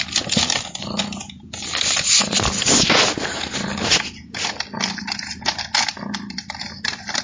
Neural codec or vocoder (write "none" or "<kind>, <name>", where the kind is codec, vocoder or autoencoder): none